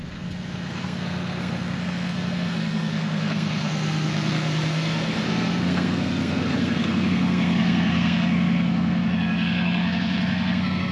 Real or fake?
fake